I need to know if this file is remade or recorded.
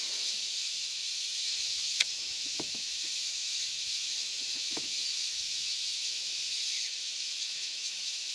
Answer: remade